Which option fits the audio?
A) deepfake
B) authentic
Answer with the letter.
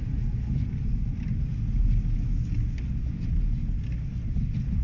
B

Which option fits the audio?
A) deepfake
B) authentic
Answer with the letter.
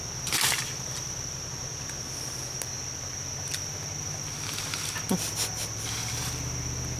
B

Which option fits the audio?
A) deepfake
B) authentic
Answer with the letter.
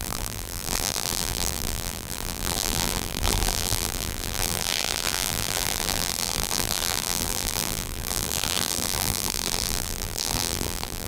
A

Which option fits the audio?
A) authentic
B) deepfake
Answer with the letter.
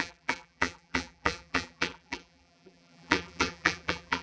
B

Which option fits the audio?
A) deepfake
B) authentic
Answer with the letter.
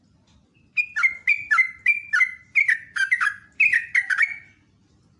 B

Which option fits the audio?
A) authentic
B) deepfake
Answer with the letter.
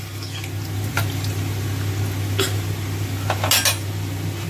A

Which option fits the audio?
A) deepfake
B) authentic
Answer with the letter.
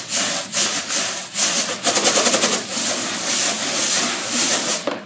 B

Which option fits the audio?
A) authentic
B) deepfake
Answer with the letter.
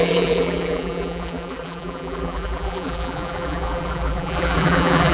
B